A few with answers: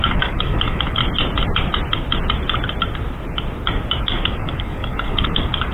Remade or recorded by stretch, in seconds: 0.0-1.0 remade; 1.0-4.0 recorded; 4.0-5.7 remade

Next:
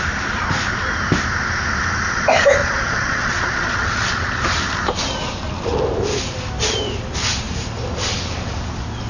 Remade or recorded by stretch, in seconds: 0.0-2.6 recorded; 2.6-4.4 remade; 4.4-9.1 recorded

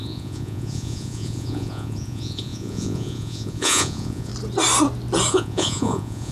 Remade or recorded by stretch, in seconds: 0.0-4.3 remade; 4.3-5.3 recorded; 5.3-6.3 remade